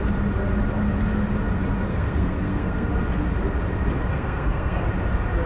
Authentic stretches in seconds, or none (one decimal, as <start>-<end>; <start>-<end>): 0.0-1.9; 2.9-4.1; 4.9-5.5